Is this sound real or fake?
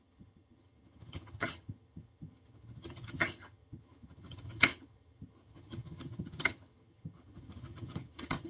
fake